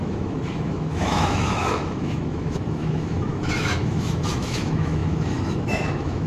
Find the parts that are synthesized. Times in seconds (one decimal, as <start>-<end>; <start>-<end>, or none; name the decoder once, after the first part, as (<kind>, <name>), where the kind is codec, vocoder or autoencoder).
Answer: 0.0-6.3 (autoencoder, DAC-VAE)